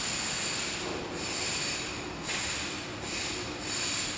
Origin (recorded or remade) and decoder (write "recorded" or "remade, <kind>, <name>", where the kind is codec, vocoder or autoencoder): recorded